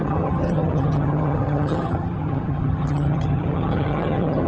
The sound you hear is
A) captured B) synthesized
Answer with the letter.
B